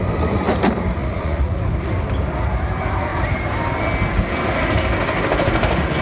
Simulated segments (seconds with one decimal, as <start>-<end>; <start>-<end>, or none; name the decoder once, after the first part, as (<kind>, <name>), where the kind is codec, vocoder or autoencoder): 1.0-1.6 (vocoder, Vocos)